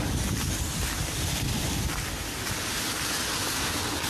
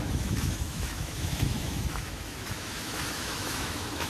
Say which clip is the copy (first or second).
second